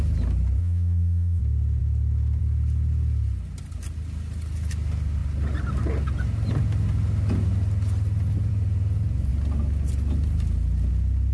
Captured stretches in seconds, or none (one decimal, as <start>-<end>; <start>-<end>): 0.0-0.6; 1.4-11.3